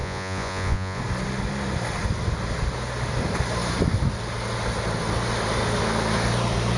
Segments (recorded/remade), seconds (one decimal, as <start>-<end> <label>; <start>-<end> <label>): 0.0-1.0 remade; 1.0-6.8 recorded